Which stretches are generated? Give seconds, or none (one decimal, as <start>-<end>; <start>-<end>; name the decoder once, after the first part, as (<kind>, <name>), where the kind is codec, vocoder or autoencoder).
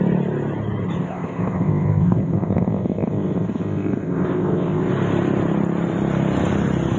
1.0-4.9 (codec, ZipCodec)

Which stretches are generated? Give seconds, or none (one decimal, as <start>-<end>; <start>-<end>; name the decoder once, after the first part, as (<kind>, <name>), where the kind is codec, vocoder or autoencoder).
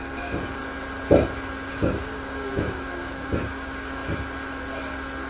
0.0-0.6 (codec, DAC); 1.7-4.0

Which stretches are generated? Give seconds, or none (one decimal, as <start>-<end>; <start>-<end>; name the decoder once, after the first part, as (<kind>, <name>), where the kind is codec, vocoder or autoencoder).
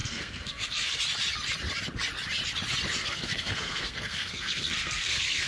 0.0-1.0 (codec, SNAC); 3.0-5.5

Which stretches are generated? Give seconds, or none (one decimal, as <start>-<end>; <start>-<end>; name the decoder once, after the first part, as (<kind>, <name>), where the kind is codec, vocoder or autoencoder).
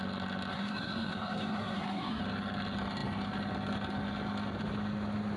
0.5-2.2 (codec, SNAC)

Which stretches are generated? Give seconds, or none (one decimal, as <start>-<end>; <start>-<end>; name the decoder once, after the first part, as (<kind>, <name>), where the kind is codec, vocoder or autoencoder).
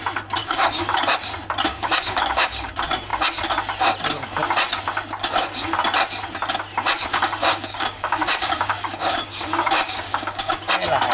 0.4-1.0 (codec, DAC); 1.7-2.7; 7.1-10.7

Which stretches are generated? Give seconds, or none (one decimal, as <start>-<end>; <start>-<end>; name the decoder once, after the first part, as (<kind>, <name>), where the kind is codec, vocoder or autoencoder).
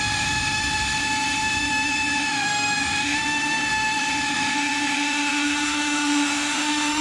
0.0-7.0 (autoencoder, DAC-VAE)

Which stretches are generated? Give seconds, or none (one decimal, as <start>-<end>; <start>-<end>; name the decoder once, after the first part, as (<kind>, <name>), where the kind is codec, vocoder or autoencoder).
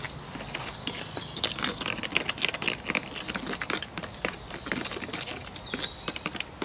none